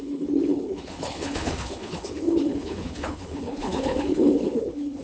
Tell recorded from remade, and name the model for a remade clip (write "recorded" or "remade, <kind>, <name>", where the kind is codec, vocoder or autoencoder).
remade, codec, HILCodec